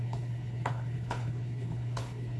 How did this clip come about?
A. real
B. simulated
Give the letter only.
B